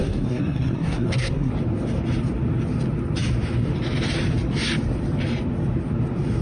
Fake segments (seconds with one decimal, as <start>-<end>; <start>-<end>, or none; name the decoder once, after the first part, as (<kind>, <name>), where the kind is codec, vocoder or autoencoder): 0.0-1.5 (codec, SNAC)